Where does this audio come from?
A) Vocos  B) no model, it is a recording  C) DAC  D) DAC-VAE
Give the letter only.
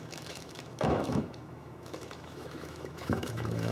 D